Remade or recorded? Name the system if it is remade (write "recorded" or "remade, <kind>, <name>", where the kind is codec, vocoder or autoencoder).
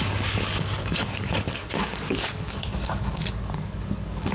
remade, codec, DAC